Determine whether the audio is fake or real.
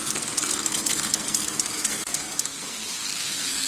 fake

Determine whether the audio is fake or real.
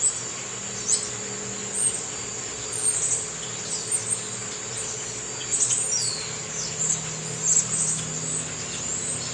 real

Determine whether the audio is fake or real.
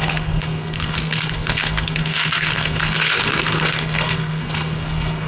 fake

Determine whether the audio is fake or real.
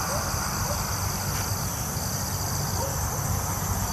real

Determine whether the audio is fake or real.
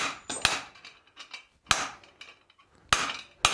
real